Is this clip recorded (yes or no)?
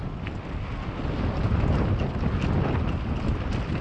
yes